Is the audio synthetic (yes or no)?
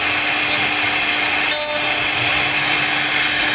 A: no